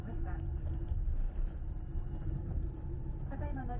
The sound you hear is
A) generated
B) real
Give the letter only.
A